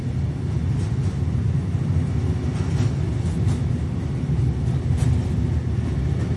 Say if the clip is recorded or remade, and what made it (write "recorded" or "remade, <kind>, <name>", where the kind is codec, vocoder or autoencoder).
recorded